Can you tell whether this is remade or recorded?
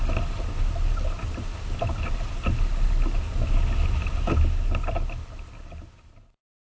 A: recorded